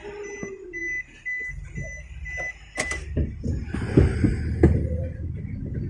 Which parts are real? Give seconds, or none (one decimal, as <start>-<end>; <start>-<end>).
0.0-5.9